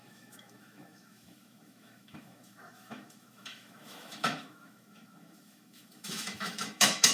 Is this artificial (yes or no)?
yes